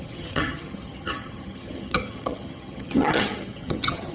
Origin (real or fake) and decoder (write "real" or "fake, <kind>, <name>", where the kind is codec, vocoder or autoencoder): fake, vocoder, HiFi-GAN